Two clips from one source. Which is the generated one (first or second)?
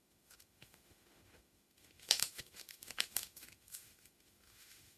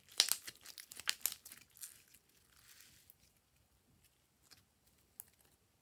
first